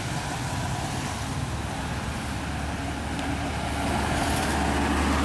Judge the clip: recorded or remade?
recorded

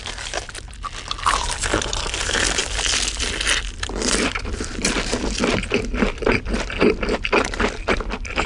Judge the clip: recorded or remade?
remade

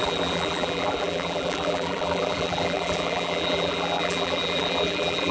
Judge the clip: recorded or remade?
remade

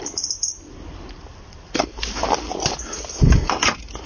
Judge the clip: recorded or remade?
recorded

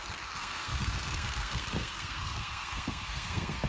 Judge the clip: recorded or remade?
remade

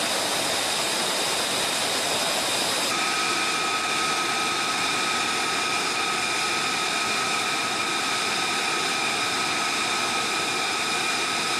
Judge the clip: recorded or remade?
recorded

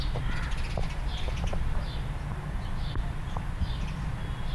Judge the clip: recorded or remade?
recorded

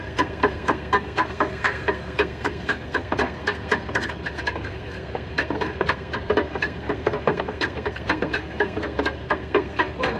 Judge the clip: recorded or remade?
remade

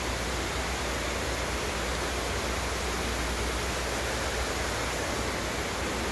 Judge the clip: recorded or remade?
recorded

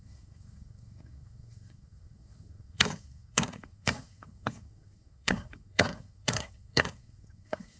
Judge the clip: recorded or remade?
remade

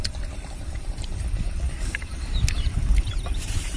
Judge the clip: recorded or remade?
remade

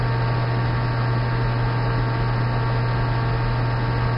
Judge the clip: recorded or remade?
recorded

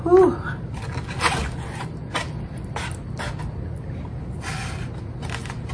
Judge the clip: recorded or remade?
recorded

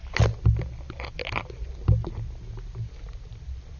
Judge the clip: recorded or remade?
recorded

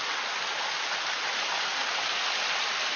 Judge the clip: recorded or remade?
recorded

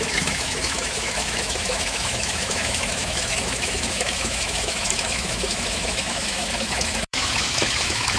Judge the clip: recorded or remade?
remade